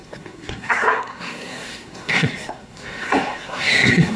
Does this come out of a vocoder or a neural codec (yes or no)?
yes